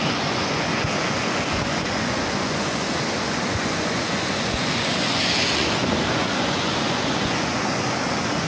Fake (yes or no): yes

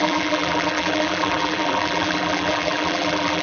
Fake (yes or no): yes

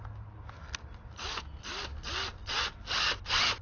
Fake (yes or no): no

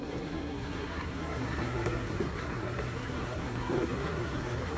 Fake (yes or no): yes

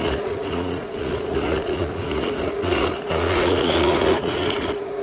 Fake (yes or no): yes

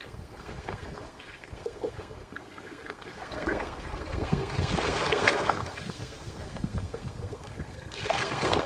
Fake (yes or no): yes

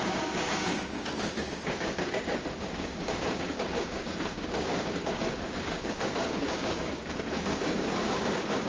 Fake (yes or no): yes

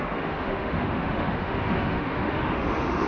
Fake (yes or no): yes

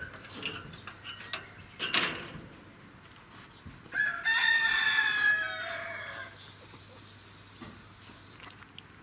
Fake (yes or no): no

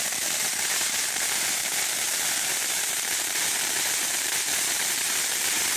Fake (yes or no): yes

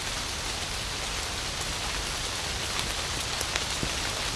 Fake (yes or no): no